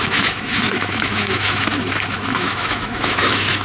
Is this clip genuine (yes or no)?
no